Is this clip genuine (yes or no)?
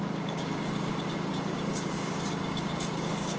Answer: no